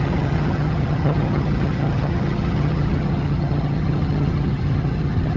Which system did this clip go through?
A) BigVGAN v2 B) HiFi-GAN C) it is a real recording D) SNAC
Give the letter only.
B